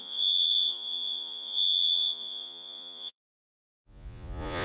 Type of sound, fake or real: fake